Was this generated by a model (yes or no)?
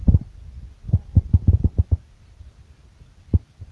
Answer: no